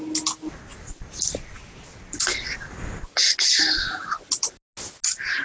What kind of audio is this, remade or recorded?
recorded